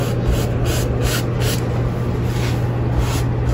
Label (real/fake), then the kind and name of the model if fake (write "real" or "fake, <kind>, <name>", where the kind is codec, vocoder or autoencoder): real